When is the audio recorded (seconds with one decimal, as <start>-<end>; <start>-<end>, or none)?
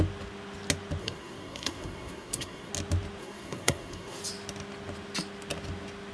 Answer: 0.0-1.0; 2.7-3.2; 4.2-6.1